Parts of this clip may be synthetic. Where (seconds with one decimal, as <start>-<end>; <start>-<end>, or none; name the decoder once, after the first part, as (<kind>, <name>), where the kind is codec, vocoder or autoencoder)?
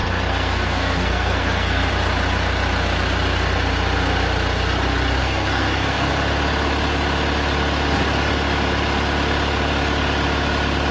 0.0-1.9 (codec, SNAC); 5.2-6.1